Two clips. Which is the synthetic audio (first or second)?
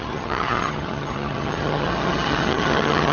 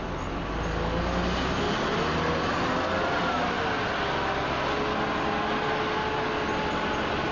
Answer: first